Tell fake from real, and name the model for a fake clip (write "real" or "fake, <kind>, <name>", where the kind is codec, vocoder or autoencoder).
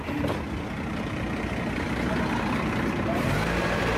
real